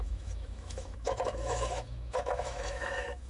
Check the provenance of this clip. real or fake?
fake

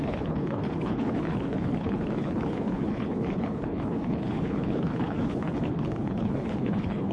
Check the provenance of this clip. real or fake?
fake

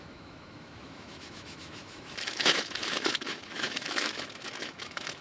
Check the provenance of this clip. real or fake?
fake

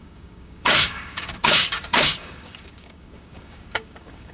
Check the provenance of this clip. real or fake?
fake